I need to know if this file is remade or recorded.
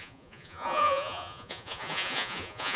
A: remade